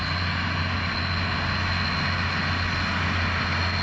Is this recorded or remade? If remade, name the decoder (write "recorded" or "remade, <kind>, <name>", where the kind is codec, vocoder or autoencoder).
recorded